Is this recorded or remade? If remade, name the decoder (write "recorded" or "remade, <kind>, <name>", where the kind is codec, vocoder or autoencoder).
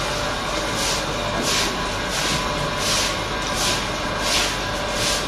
recorded